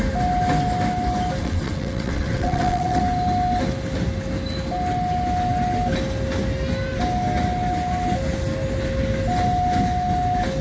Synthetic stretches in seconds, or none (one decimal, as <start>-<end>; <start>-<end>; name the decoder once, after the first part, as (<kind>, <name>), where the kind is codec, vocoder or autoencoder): 1.4-3.0 (vocoder, WaveNeXt)